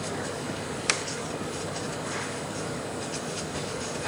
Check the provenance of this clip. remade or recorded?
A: remade